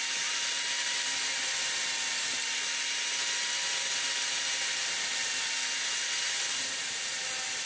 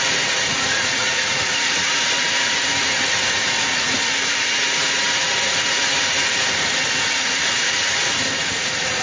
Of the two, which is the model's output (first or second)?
second